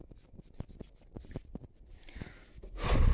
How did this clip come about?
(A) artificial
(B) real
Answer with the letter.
B